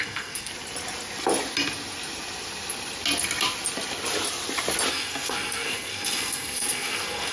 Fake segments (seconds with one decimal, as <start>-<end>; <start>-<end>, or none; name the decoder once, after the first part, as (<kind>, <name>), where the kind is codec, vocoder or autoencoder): 0.0-0.5 (codec, SNAC); 4.9-7.3